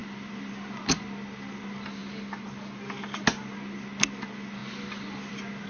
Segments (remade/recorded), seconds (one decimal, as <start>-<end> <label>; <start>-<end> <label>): 0.0-5.7 recorded